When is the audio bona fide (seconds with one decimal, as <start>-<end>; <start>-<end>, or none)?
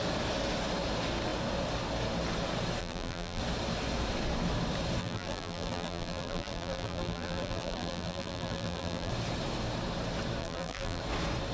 0.0-2.8; 3.4-5.0; 9.1-10.4; 11.0-11.5